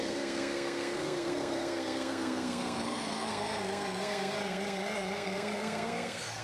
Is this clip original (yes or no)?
no